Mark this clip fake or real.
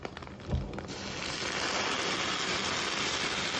real